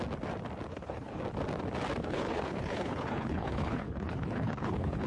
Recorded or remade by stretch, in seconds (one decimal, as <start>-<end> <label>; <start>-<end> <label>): 0.0-0.7 recorded; 0.7-1.2 remade; 1.2-2.0 recorded; 2.0-5.1 remade